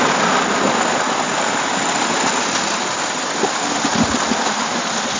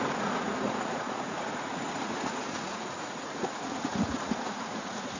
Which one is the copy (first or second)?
second